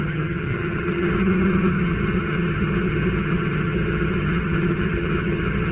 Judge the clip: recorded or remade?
remade